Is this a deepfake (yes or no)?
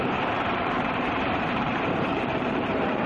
yes